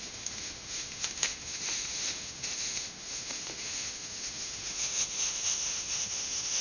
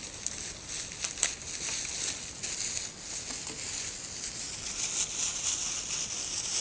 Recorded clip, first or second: second